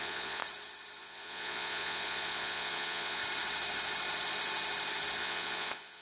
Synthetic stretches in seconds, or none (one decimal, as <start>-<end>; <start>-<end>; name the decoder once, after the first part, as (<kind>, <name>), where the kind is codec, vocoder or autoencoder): 0.0-0.4 (vocoder, Vocos); 1.0-3.2; 5.2-6.0